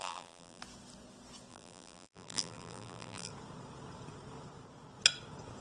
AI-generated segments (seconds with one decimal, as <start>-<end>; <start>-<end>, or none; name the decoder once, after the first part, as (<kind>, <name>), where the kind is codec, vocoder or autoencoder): 0.0-0.6 (vocoder, BigVGAN v2); 1.5-3.3